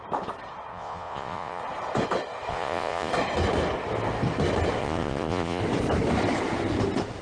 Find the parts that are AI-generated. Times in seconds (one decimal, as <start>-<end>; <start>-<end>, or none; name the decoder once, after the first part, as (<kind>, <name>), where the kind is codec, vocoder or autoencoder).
0.7-1.6 (vocoder, Vocos); 2.5-3.1; 4.8-5.6